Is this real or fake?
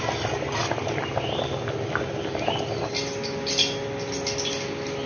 real